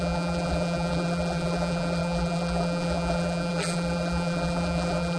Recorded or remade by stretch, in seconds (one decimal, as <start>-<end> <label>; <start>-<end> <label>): 0.0-5.2 remade

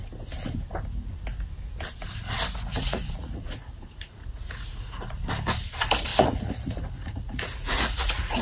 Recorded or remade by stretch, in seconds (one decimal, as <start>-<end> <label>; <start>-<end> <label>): 0.0-2.7 recorded; 2.7-5.2 remade; 5.2-6.1 recorded; 6.1-8.4 remade

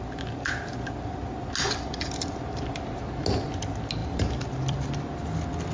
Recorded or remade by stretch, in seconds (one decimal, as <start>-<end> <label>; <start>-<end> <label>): 0.0-4.0 recorded; 4.0-4.9 remade; 4.9-5.7 recorded

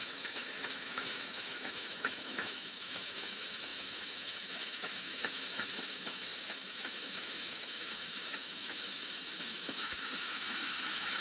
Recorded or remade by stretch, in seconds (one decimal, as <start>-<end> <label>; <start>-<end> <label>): 0.0-11.2 remade

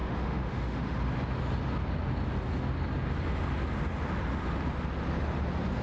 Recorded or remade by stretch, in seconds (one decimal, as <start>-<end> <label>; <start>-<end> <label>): 0.0-1.0 remade; 1.0-5.8 recorded

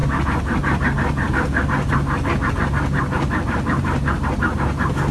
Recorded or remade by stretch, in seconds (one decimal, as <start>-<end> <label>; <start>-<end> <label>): 0.0-5.1 recorded